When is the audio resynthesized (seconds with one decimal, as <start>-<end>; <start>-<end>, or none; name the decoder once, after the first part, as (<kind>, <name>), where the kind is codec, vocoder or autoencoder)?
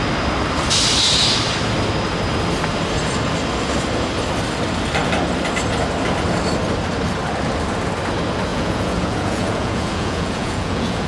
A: 8.5-11.1 (vocoder, Vocos)